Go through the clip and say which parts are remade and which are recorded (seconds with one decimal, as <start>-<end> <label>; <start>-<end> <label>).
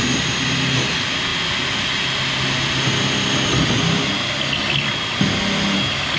0.0-6.2 recorded